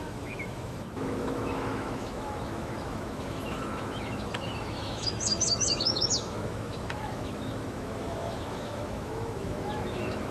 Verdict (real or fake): fake